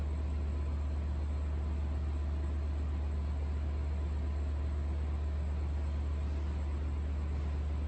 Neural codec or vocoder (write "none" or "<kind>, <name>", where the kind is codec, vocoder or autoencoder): none